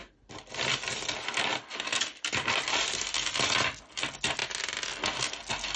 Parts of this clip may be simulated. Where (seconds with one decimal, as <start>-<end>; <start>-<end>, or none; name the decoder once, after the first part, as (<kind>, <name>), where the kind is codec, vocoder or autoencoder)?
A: none